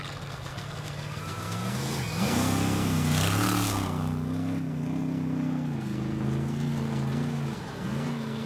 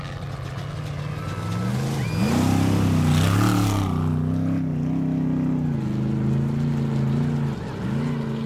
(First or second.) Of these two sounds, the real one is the second